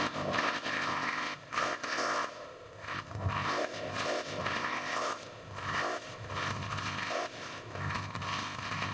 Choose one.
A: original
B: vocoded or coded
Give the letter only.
B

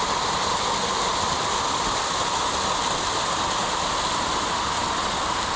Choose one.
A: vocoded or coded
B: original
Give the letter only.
B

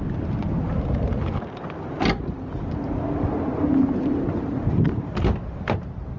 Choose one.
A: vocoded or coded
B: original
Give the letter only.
B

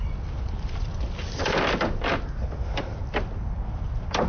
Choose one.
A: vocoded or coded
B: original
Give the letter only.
B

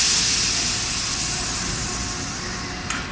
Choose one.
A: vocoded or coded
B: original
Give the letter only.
B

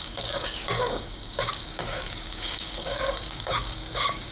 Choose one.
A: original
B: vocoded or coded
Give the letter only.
B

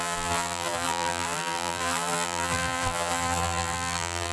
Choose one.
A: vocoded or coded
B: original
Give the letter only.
A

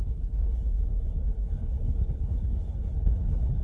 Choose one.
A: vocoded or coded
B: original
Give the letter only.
A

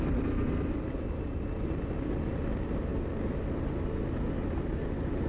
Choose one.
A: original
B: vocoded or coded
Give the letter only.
A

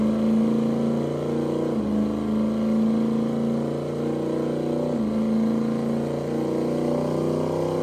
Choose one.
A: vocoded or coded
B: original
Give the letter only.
B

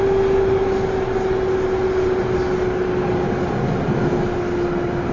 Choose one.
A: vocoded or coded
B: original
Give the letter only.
B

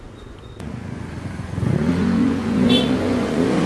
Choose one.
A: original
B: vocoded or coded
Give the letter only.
B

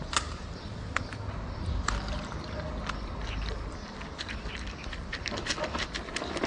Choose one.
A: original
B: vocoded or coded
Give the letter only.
B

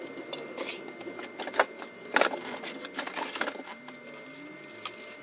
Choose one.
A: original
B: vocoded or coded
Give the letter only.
A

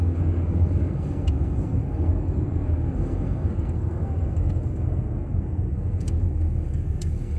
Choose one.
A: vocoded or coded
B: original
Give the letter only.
A